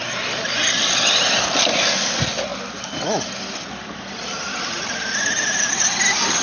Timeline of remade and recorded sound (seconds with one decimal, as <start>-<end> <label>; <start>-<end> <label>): 0.0-6.4 recorded